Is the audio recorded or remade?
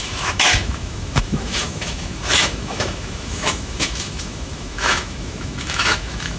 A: remade